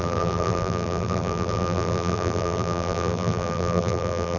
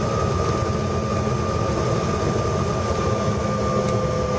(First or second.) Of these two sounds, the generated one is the first